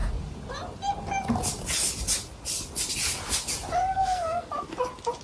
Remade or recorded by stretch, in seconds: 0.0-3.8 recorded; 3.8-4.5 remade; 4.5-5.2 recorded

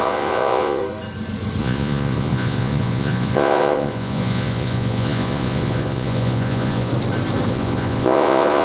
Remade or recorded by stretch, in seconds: 0.0-0.8 remade; 0.8-1.6 recorded; 1.6-6.9 remade; 6.9-7.5 recorded; 7.5-8.6 remade

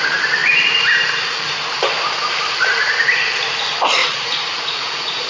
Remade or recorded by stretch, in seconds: 0.0-4.0 recorded; 4.0-5.3 remade

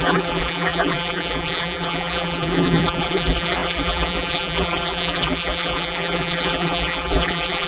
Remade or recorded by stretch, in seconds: 0.0-7.7 remade

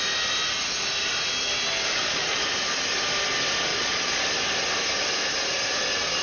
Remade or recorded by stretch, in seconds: 0.0-1.9 recorded; 1.9-2.4 remade; 2.4-3.7 recorded; 3.7-4.2 remade; 4.2-6.2 recorded